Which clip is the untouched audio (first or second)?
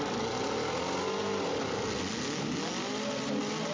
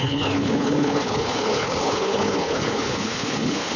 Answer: first